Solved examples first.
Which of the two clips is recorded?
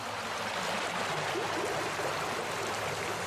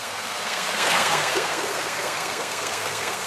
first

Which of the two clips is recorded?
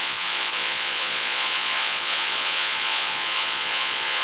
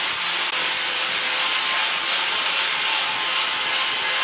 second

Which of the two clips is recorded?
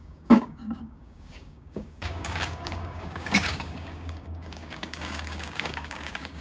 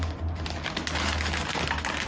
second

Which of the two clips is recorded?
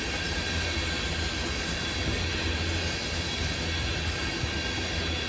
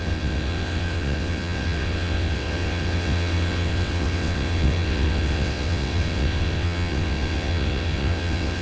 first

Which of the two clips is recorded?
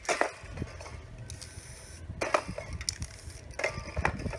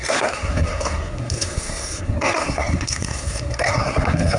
first